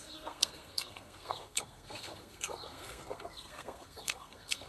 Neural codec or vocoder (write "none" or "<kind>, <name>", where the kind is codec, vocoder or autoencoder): codec, SNAC